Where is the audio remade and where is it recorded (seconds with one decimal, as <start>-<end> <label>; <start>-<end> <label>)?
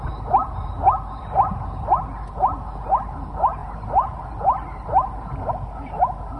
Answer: 0.0-3.6 recorded; 3.6-5.5 remade; 5.5-6.4 recorded